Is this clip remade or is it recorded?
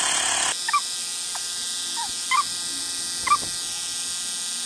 recorded